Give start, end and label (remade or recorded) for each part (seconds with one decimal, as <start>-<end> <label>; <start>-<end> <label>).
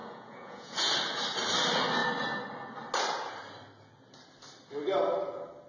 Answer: 0.0-0.9 remade; 0.9-5.7 recorded